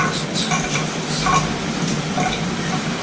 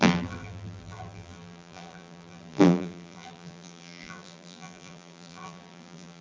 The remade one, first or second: second